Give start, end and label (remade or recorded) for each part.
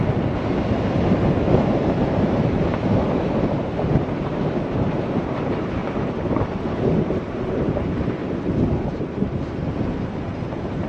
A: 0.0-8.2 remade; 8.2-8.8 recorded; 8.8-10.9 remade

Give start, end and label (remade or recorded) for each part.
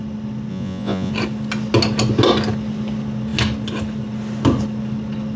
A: 0.0-0.5 recorded; 0.5-1.1 remade; 1.1-5.4 recorded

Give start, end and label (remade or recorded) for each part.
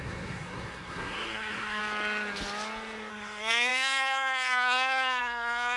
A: 0.0-1.8 remade; 1.8-3.1 recorded; 3.1-5.8 remade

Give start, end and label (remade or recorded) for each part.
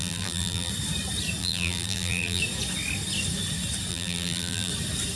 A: 0.0-0.7 remade; 0.7-1.4 recorded; 1.4-2.4 remade; 2.4-3.9 recorded; 3.9-4.7 remade; 4.7-5.2 recorded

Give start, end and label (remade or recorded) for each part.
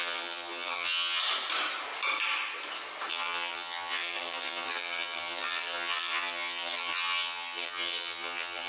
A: 0.0-1.2 remade; 1.2-3.1 recorded; 3.1-8.7 remade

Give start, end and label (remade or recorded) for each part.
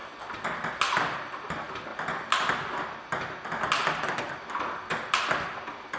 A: 0.0-6.0 recorded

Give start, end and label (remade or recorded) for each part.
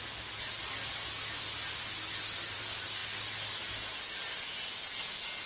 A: 0.0-5.5 recorded